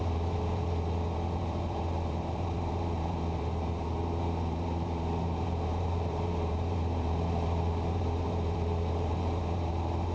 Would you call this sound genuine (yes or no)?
no